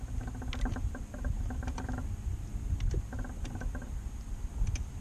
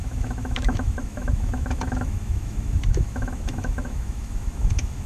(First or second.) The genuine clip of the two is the first